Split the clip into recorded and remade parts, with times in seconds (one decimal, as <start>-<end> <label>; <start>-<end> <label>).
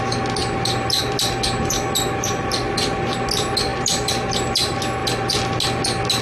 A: 0.0-6.2 recorded